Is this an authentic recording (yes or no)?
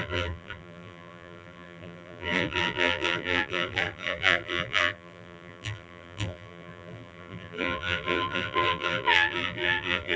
no